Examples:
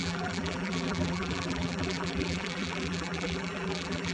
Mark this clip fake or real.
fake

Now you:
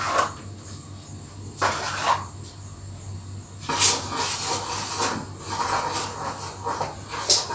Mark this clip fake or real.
real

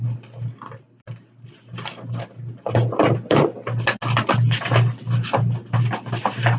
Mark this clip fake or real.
real